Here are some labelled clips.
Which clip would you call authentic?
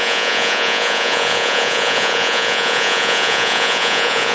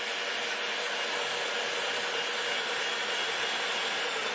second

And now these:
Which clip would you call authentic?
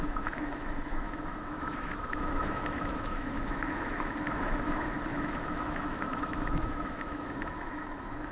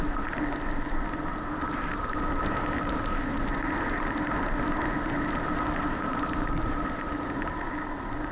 second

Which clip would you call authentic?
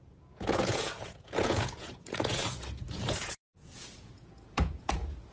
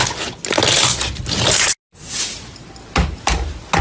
second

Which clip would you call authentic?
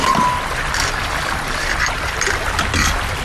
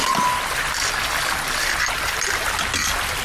second